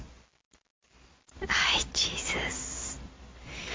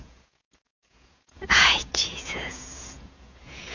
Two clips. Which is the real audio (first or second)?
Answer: first